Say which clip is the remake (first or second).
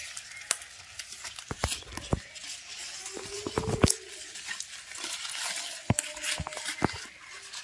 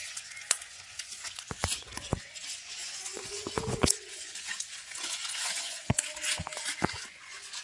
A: second